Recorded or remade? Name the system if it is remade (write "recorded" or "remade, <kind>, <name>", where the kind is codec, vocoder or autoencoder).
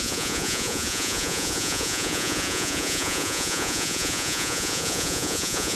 remade, vocoder, Vocos